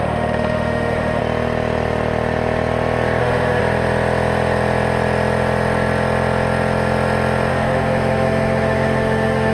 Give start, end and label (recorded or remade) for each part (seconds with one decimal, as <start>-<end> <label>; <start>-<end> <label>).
0.0-1.2 remade; 1.2-3.2 recorded; 3.2-3.6 remade; 3.6-7.5 recorded; 7.5-9.5 remade